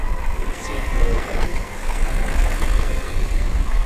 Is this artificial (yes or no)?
yes